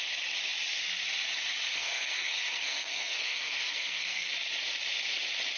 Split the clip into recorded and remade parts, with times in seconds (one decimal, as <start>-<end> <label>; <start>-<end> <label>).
0.0-1.8 recorded; 1.8-4.3 remade; 4.3-5.6 recorded